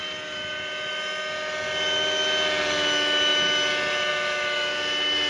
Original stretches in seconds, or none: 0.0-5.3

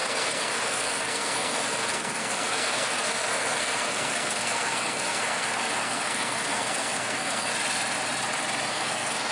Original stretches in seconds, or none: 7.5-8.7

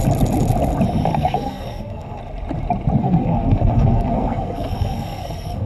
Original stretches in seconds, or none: 0.0-1.1; 2.2-3.0

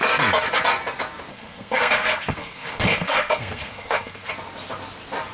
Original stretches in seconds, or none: 0.0-1.3; 4.3-5.3

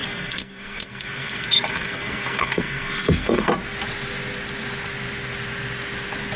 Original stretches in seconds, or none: 3.5-6.4

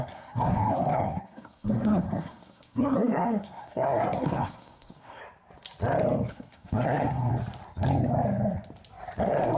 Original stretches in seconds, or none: 5.2-6.3; 7.3-9.2

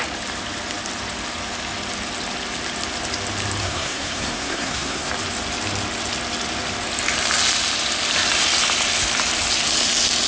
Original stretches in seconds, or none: 0.0-3.6; 5.1-10.3

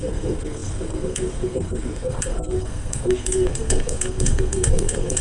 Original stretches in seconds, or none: none